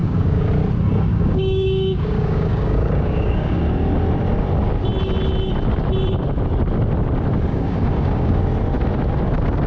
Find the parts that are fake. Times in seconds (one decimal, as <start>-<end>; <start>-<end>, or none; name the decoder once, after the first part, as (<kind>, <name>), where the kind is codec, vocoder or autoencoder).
0.0-0.5 (codec, DAC); 1.1-3.6; 7.5-8.4